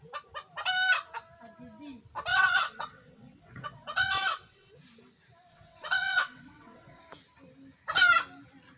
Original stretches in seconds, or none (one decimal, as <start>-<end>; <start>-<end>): 0.0-2.3; 4.7-5.5; 7.0-8.8